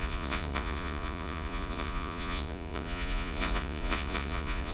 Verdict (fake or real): fake